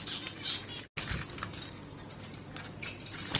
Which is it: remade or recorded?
recorded